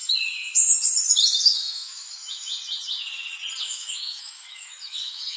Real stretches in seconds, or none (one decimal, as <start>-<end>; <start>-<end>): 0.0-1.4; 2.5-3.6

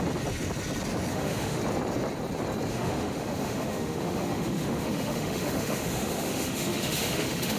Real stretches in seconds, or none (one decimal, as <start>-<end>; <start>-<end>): 0.0-1.1; 1.6-2.7

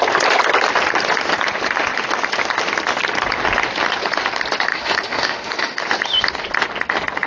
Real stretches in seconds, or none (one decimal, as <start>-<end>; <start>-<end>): 0.0-4.7; 5.8-7.3